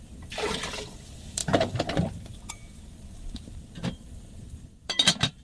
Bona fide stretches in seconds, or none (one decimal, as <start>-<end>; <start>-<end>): none